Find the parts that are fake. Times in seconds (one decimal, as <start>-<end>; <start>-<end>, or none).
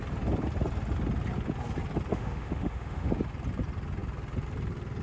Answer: 2.1-3.1